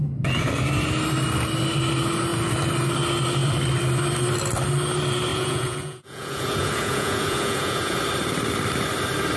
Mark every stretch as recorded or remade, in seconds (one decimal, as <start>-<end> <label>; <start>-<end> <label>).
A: 0.0-5.3 recorded; 5.3-8.0 remade; 8.0-9.4 recorded